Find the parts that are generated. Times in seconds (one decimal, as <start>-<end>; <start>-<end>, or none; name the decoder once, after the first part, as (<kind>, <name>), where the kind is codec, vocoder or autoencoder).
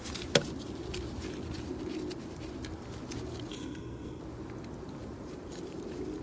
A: 3.5-4.2 (codec, SNAC)